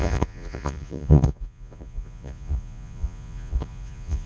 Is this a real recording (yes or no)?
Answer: no